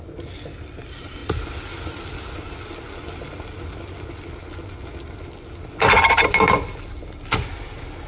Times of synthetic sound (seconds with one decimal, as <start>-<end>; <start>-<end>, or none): none